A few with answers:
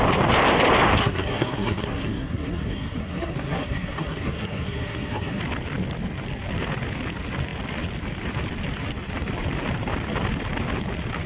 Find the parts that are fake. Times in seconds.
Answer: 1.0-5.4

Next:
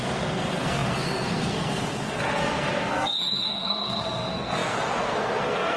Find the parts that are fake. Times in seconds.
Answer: 0.0-5.8

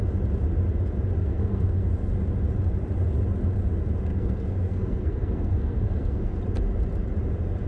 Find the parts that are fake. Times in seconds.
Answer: 1.2-1.9; 4.1-6.4

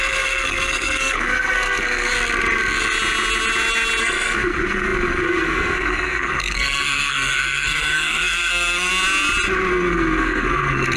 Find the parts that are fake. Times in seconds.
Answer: 0.0-2.1; 4.0-8.9; 9.7-11.0

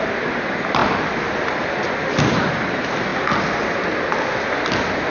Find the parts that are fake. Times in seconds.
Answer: none

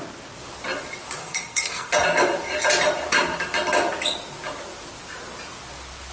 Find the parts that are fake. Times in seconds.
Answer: 1.2-1.9

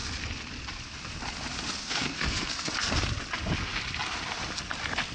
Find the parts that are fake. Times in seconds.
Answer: 1.8-2.9